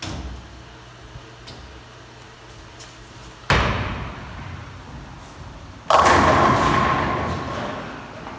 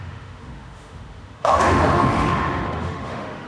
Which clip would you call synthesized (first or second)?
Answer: second